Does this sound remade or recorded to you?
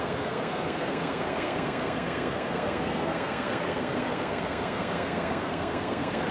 remade